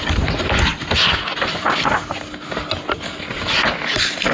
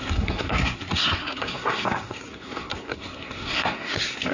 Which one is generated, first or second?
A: second